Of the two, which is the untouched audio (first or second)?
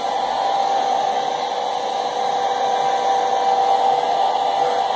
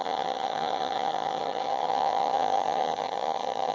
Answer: first